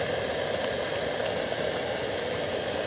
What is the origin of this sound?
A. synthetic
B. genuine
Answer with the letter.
B